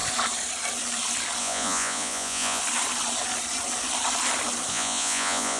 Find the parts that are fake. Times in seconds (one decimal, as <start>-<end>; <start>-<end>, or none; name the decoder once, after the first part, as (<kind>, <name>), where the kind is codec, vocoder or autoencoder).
1.4-2.6 (vocoder, Vocos); 4.7-5.6